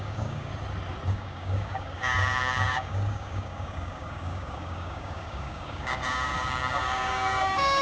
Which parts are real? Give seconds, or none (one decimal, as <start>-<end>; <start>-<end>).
0.5-1.1